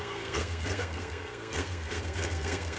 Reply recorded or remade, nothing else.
remade